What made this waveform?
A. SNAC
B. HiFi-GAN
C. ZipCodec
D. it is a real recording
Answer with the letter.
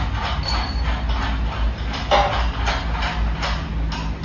D